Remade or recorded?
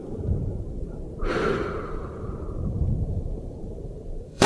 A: remade